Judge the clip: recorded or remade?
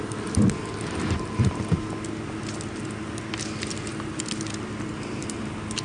recorded